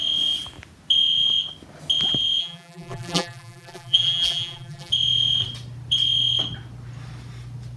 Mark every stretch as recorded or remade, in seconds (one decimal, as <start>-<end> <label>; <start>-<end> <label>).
0.0-2.4 recorded; 2.4-4.9 remade; 4.9-7.8 recorded